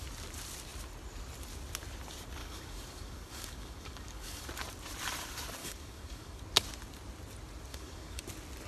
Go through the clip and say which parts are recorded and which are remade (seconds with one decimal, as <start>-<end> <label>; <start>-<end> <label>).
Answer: 0.0-2.4 recorded; 2.4-4.5 remade; 4.5-5.6 recorded; 5.6-6.4 remade; 6.4-7.7 recorded; 7.7-8.2 remade; 8.2-8.7 recorded